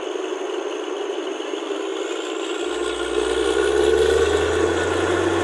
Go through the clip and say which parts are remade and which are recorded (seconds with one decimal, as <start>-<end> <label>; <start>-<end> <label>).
0.0-5.4 recorded